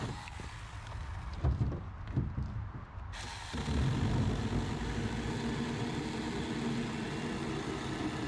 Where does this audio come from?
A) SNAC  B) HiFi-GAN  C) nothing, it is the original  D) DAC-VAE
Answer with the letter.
C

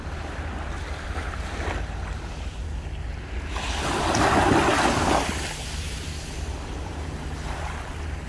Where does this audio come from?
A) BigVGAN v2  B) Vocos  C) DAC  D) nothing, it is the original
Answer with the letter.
D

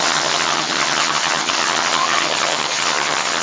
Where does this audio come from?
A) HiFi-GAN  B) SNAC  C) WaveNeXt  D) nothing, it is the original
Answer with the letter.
A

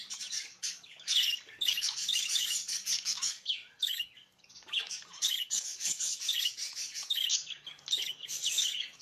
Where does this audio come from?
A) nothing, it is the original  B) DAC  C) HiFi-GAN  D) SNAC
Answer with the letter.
B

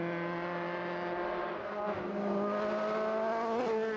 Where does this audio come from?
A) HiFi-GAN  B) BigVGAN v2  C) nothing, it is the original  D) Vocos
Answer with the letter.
C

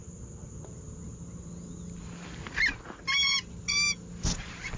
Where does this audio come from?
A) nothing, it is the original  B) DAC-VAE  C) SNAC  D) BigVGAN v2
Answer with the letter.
A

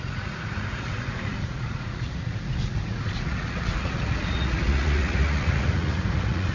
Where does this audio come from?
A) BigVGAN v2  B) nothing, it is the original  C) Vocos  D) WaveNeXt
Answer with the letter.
C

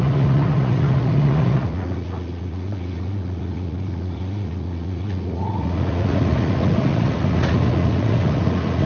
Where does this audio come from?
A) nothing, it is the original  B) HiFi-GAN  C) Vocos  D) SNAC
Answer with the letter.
C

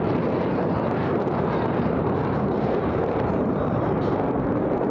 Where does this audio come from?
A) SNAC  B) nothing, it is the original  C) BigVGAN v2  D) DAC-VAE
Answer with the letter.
C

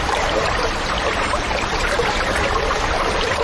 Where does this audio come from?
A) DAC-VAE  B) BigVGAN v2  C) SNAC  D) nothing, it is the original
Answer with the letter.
B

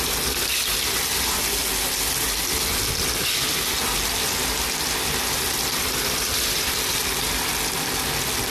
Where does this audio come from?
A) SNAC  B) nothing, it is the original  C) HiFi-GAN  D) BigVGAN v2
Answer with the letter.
B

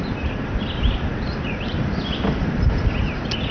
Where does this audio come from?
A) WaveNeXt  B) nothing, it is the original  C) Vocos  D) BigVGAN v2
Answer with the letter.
B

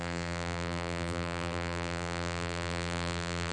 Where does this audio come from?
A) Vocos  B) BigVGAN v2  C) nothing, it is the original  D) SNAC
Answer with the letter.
B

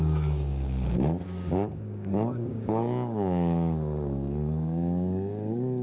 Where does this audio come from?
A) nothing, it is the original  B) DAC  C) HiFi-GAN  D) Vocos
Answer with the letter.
B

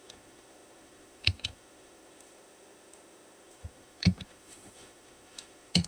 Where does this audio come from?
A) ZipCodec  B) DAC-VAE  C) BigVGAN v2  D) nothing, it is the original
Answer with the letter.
B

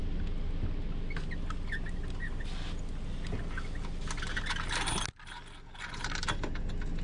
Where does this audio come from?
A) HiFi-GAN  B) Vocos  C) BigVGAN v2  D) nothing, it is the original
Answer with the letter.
D